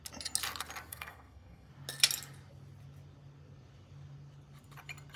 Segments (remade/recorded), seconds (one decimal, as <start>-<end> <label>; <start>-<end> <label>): 0.0-0.9 recorded; 0.9-1.7 remade; 1.7-5.2 recorded